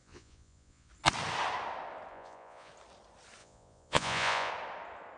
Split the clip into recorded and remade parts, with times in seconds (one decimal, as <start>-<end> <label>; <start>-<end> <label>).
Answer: 0.0-0.9 remade; 0.9-2.1 recorded; 2.1-2.7 remade; 2.7-3.4 recorded; 3.4-4.5 remade; 4.5-5.2 recorded